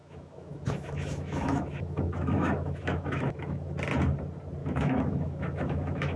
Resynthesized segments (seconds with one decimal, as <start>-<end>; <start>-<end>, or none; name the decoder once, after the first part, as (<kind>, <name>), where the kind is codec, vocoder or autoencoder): 0.0-3.7 (autoencoder, DAC-VAE); 4.6-6.2